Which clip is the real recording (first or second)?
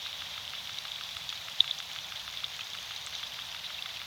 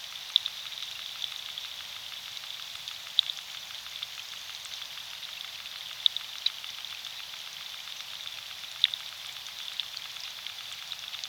second